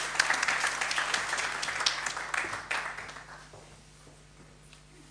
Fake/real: real